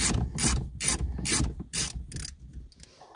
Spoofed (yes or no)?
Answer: no